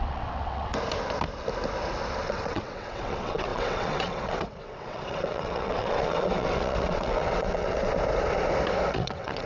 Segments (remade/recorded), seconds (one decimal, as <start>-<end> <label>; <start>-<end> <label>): 0.0-0.7 remade; 0.7-2.2 recorded; 2.2-7.9 remade; 7.9-8.9 recorded; 8.9-9.5 remade